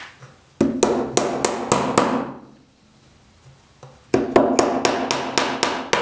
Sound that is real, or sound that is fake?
real